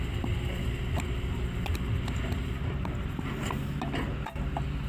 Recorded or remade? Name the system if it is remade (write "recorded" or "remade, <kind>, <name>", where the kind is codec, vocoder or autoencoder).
recorded